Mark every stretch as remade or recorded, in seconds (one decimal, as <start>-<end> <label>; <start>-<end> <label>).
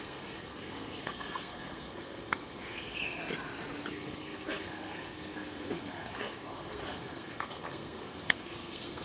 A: 0.0-3.2 remade; 3.2-3.9 recorded; 3.9-9.0 remade